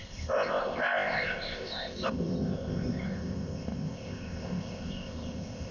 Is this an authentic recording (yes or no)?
no